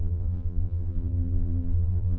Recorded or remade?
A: remade